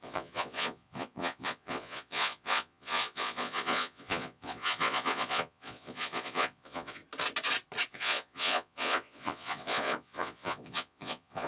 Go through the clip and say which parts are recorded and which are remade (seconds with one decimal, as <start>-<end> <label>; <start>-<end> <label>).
0.0-7.0 remade; 7.0-7.9 recorded; 7.9-11.5 remade